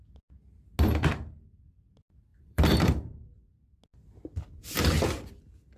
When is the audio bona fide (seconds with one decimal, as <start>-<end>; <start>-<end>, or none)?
0.0-2.3; 3.4-5.8